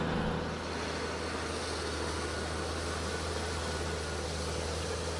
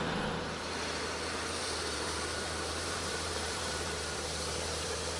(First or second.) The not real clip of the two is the second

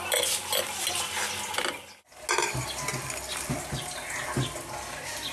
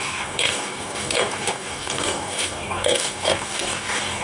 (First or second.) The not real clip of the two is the second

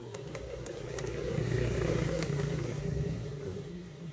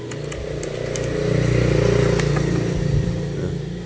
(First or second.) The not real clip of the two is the first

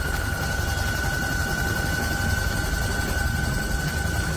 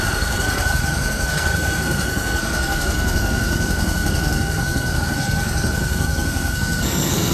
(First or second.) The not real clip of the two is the second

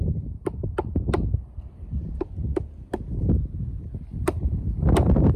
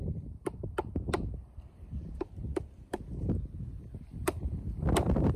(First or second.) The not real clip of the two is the second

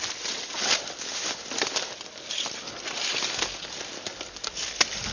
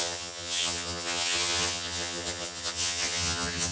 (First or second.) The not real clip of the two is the second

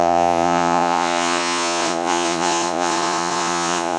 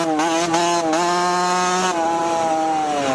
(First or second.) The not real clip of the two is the first